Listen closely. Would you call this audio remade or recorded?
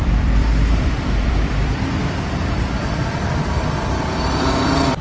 remade